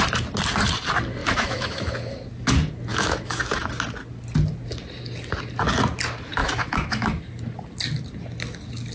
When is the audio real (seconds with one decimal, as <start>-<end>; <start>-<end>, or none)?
0.0-1.2; 1.9-2.9; 3.7-6.4; 7.2-8.9